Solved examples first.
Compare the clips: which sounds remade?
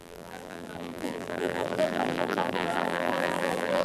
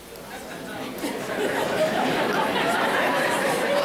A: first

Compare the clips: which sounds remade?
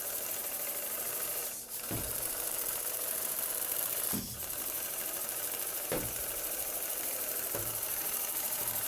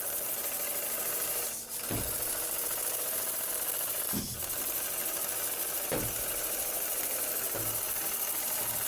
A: first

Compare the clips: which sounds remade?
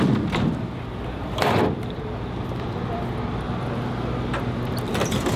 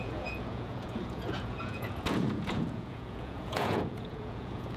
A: second